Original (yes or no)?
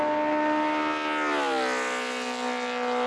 yes